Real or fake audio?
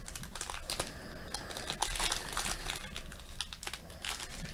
real